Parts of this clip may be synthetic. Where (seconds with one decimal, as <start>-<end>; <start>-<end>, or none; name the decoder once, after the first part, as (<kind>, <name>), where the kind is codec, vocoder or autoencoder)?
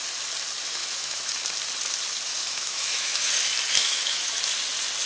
0.8-1.4 (autoencoder, DAC-VAE); 2.3-3.3; 3.8-4.4